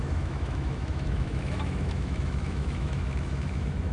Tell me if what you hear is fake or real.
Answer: fake